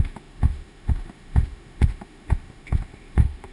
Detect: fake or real fake